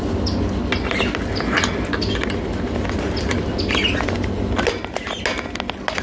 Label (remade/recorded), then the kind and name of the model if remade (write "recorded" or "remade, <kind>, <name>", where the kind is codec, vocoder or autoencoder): recorded